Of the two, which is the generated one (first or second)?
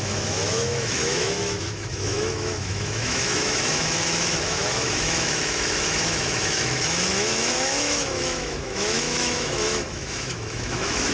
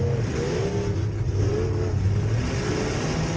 first